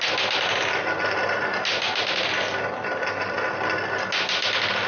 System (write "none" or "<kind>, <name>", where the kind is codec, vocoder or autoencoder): none